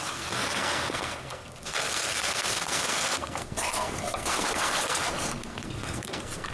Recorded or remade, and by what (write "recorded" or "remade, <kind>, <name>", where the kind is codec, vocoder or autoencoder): remade, codec, SNAC